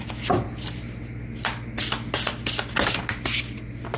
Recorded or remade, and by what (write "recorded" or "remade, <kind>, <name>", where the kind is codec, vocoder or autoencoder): recorded